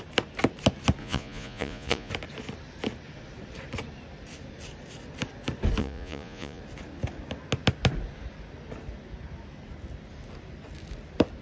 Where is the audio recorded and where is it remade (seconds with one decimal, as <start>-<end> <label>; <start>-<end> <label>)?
0.0-1.0 recorded; 1.0-2.1 remade; 2.1-5.8 recorded; 5.8-6.6 remade; 6.6-11.4 recorded